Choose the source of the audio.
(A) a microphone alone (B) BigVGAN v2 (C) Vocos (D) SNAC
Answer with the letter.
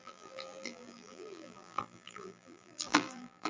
B